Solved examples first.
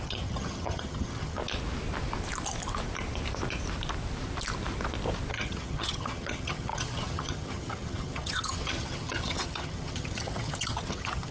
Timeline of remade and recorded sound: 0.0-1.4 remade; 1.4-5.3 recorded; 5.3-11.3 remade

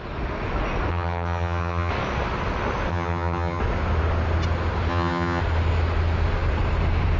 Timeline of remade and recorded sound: 0.0-0.9 recorded; 0.9-1.9 remade; 1.9-2.9 recorded; 2.9-3.6 remade; 3.6-4.9 recorded; 4.9-5.4 remade; 5.4-7.2 recorded

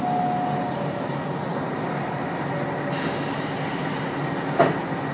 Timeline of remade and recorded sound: 0.0-5.1 recorded

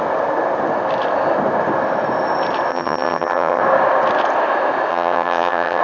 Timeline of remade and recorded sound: 0.0-2.7 recorded; 2.7-3.6 remade; 3.6-4.9 recorded; 4.9-5.8 remade

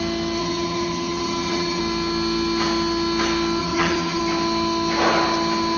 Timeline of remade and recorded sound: 0.0-0.4 recorded; 0.4-1.8 remade; 1.8-3.6 recorded; 3.6-4.2 remade; 4.2-5.8 recorded

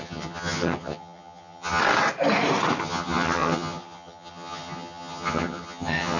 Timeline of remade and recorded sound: 0.0-1.8 remade; 1.8-2.8 recorded; 2.8-6.2 remade

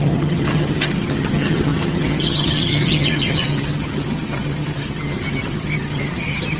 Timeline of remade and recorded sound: 0.0-6.6 remade